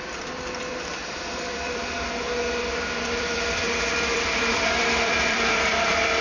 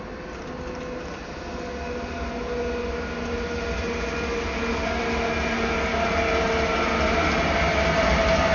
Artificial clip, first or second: first